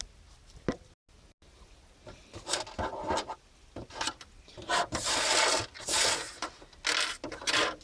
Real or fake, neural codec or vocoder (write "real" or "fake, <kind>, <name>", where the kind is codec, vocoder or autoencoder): real